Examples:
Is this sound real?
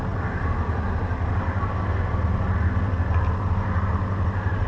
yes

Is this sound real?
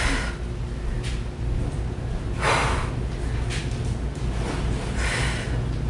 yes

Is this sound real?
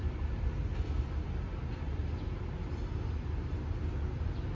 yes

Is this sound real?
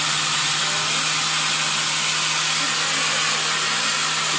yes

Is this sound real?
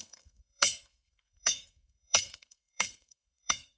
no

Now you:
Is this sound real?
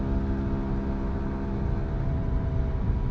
yes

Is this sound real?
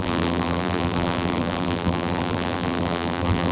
no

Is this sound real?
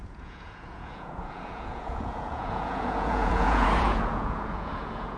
no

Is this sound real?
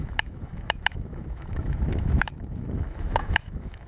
no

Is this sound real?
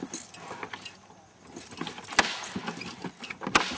yes